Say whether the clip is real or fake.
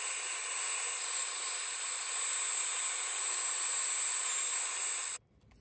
real